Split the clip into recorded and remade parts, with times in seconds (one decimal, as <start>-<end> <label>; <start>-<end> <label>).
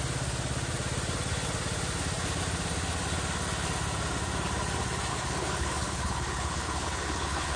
0.0-5.1 recorded; 5.1-7.6 remade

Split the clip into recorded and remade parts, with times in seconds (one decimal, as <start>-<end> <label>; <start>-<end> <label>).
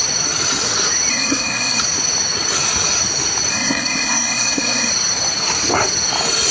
0.0-1.1 recorded; 1.1-1.8 remade; 1.8-3.5 recorded; 3.5-4.9 remade; 4.9-6.5 recorded